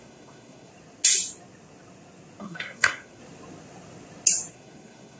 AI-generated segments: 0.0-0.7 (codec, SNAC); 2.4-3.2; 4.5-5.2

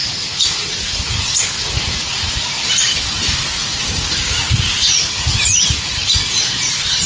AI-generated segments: 3.6-4.9 (codec, DAC)